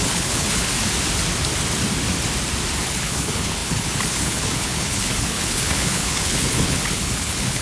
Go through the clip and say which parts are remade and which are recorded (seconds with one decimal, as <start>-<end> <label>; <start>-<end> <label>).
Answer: 0.0-0.7 remade; 0.7-2.8 recorded; 2.8-7.6 remade